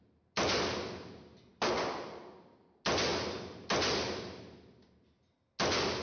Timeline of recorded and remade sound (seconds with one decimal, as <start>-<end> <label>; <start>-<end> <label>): 0.0-6.0 recorded